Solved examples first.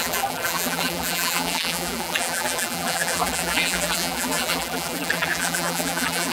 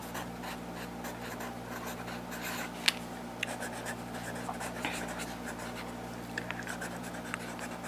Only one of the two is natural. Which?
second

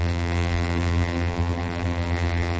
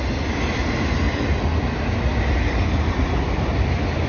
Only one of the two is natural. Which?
second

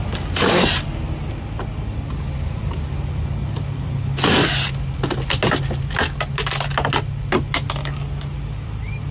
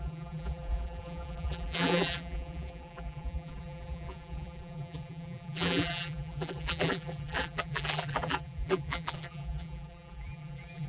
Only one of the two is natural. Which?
first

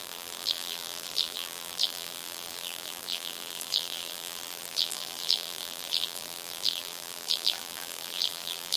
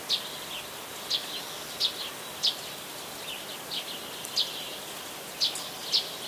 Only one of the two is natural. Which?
second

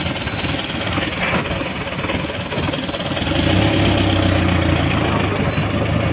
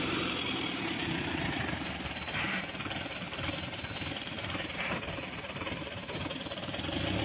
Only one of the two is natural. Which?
first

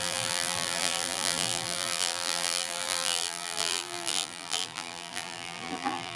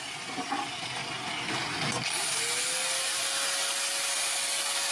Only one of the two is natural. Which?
second